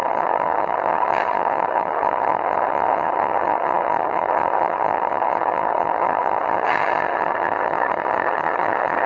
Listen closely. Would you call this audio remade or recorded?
remade